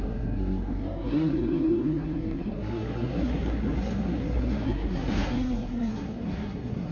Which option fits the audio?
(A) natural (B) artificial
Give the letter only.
B